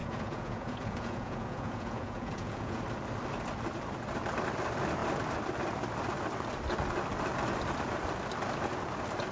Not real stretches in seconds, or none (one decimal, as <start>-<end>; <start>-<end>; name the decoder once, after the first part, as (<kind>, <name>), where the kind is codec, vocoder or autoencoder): 0.0-2.8 (vocoder, Vocos)